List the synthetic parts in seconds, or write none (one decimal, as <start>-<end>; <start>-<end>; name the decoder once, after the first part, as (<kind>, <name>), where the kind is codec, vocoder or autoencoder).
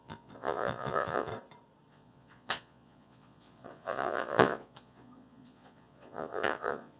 0.0-1.3 (vocoder, Vocos); 1.9-7.0